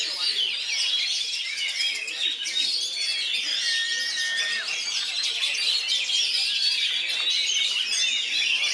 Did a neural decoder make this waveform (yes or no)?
no